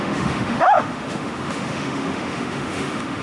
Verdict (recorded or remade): remade